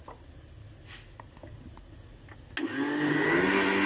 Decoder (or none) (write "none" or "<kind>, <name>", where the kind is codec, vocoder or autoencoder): none